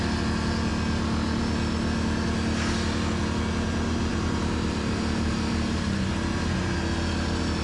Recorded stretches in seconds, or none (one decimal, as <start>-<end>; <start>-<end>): 0.0-4.1; 6.8-7.6

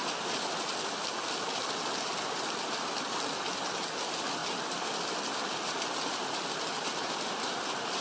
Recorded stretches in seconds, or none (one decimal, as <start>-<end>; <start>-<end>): 0.0-8.0

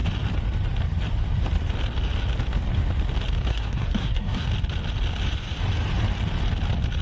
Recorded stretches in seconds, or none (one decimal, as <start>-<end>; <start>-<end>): 0.0-3.5; 4.5-7.0

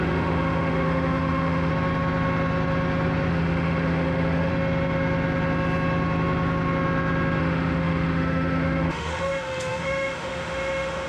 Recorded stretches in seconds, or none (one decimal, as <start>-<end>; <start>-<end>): 1.7-3.3; 4.5-7.4

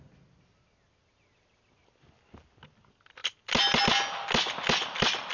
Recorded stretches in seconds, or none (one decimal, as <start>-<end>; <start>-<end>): 0.0-5.3